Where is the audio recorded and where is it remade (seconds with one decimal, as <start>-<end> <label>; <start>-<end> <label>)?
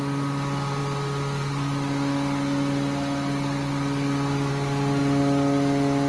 0.0-6.1 recorded